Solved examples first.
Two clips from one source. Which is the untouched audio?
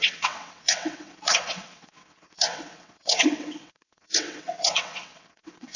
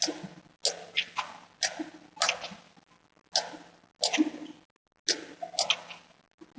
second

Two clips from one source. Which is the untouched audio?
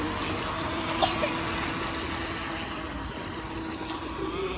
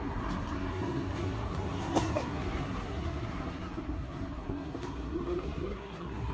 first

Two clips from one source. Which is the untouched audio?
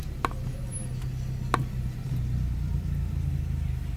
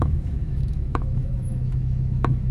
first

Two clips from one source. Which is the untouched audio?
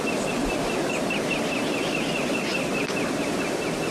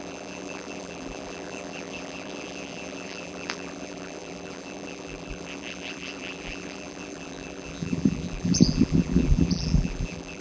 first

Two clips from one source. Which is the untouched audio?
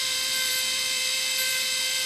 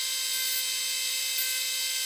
second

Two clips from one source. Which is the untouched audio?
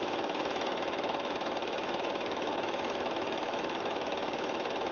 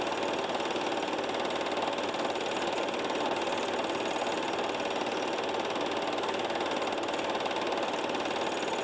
second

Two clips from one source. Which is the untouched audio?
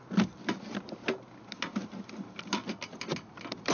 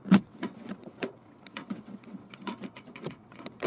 first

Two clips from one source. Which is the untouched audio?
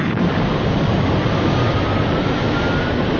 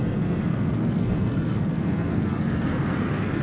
first